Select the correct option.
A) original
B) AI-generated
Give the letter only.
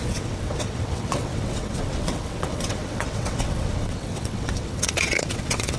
B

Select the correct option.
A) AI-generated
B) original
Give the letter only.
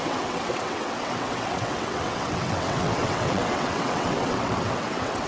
A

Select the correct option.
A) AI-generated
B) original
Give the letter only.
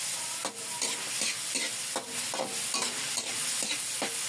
B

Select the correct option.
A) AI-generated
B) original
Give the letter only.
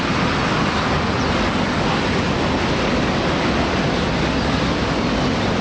B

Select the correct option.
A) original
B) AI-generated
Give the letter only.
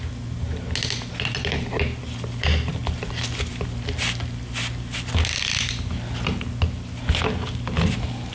A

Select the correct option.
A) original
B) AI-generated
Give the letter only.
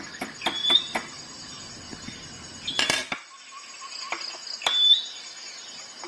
A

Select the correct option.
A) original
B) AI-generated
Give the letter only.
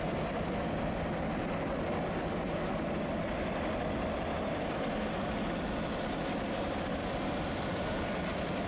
A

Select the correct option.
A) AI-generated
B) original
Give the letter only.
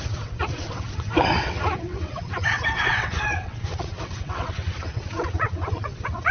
A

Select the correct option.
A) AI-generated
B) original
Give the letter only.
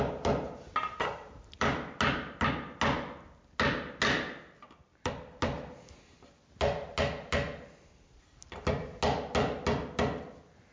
B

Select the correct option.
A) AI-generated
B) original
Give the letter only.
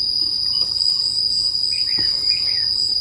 B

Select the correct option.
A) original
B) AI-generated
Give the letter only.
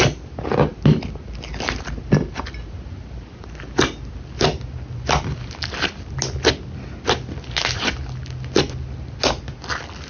A